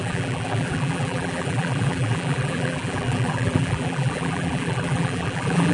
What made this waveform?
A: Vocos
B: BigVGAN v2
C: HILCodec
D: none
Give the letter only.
B